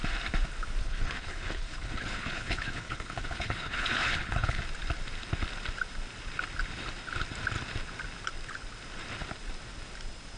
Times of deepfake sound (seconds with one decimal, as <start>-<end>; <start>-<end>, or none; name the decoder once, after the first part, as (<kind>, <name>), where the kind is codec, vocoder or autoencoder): 0.8-4.6 (codec, HILCodec)